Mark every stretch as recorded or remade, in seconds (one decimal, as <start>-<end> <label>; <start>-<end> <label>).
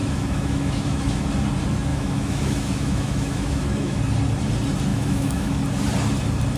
0.0-1.3 remade; 1.3-1.9 recorded; 1.9-4.0 remade; 4.0-4.9 recorded; 4.9-5.6 remade; 5.6-6.6 recorded